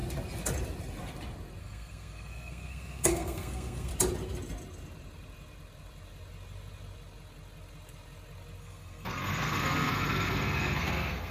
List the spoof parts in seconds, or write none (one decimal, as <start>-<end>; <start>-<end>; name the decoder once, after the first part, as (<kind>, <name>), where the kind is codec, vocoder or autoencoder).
1.6-3.9 (codec, SNAC); 8.6-11.3